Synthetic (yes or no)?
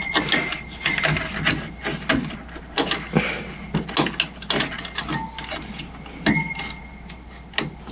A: no